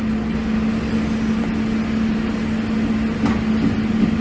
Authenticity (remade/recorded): recorded